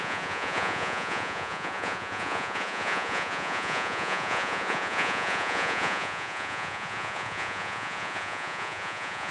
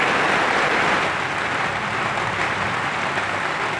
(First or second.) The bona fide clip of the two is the second